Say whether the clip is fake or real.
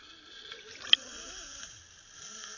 real